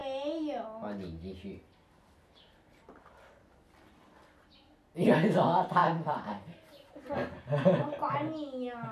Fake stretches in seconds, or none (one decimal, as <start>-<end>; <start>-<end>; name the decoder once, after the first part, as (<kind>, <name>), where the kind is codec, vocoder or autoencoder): 5.8-6.9 (vocoder, BigVGAN v2)